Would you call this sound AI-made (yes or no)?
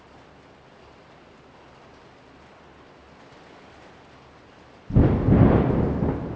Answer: no